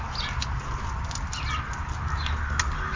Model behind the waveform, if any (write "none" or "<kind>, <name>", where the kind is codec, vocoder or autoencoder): none